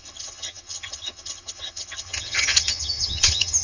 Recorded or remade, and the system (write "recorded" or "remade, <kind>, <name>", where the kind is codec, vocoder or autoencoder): remade, vocoder, HiFi-GAN